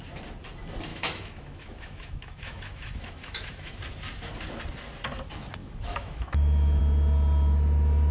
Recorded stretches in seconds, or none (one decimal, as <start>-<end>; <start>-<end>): 0.0-0.9; 3.7-5.6; 6.8-8.1